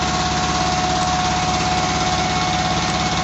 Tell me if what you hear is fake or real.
real